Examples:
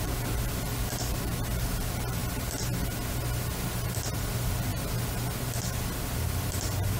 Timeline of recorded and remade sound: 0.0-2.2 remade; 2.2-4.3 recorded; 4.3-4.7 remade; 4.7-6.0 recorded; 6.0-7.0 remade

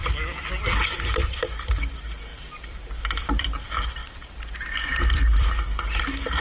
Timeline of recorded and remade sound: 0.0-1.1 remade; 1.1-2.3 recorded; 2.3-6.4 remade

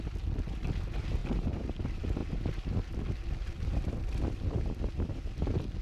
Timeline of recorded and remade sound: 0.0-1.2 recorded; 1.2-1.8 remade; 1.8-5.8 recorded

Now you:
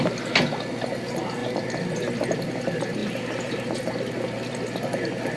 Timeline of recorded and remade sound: 0.0-3.0 recorded; 3.0-3.7 remade; 3.7-5.4 recorded